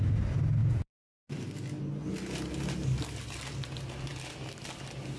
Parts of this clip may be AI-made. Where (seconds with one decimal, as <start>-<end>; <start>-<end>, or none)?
0.6-1.2